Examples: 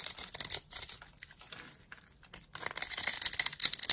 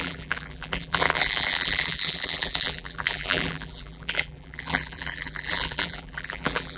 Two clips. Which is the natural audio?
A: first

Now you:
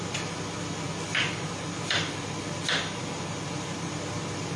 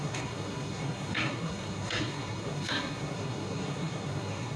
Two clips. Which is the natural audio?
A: first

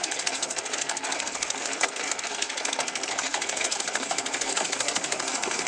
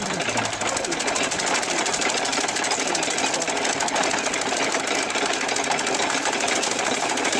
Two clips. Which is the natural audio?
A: second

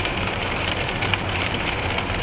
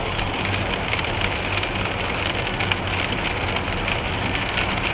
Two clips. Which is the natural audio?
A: second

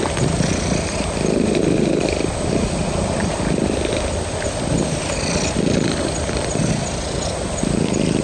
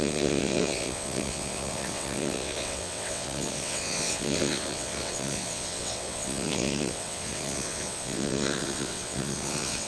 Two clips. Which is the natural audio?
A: first